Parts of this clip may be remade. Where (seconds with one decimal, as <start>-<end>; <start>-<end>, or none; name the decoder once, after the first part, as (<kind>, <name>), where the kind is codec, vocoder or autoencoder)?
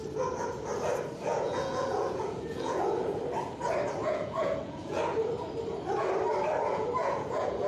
1.3-3.2 (vocoder, Vocos); 4.0-5.0; 6.7-7.7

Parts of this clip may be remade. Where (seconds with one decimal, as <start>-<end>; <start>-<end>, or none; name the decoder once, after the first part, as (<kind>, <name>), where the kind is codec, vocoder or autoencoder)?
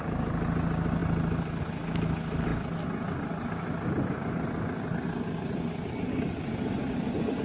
none